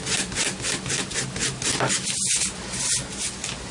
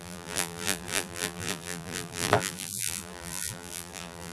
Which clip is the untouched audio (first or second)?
first